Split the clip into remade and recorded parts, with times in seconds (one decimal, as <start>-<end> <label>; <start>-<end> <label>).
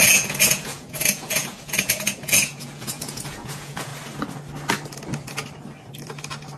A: 0.0-3.9 remade; 3.9-6.6 recorded